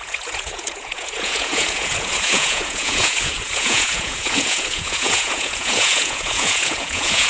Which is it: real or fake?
fake